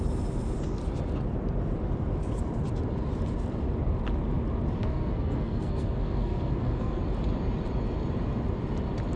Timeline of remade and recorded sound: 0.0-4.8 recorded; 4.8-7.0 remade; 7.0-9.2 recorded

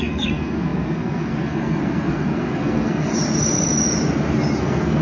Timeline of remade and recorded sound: 0.0-3.1 remade; 3.1-4.6 recorded; 4.6-5.0 remade

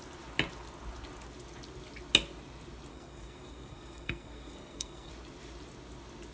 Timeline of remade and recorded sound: 0.0-2.9 recorded; 2.9-5.1 remade; 5.1-6.3 recorded

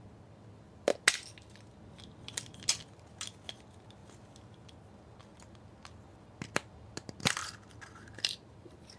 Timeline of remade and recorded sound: 0.0-9.0 recorded